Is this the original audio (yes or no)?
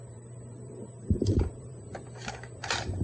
no